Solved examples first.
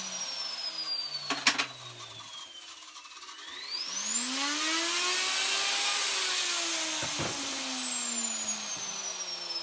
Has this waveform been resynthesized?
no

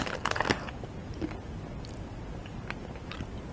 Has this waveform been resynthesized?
no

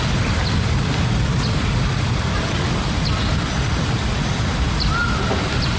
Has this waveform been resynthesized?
no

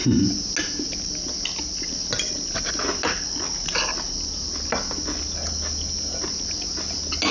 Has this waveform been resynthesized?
no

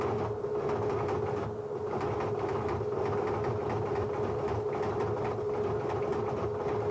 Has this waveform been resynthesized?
no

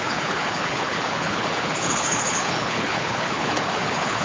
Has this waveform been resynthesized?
yes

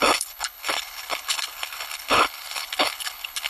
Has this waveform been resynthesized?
yes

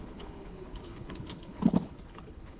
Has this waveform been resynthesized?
yes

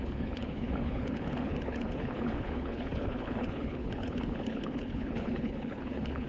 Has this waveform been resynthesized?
yes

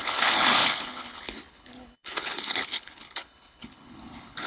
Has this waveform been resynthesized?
yes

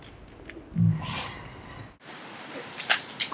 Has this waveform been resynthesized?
no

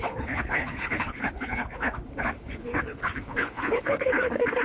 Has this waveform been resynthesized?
yes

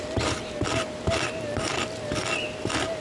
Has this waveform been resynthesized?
no